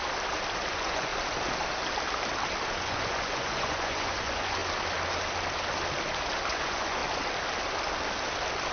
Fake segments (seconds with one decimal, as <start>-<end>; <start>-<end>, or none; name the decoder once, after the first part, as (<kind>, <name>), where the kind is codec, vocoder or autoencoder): 0.7-1.1 (vocoder, Vocos); 2.8-4.6; 6.5-7.0